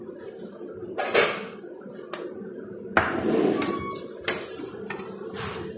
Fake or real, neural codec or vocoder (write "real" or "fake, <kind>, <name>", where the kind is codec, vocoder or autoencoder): real